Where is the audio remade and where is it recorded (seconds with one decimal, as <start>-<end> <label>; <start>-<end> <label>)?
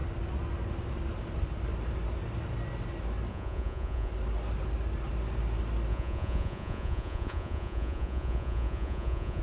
0.0-3.3 recorded; 3.3-4.1 remade; 4.1-5.9 recorded; 5.9-9.4 remade